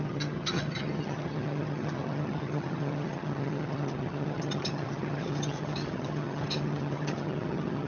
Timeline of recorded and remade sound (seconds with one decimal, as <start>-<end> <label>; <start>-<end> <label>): 0.0-7.9 remade